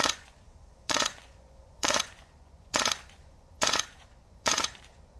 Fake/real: fake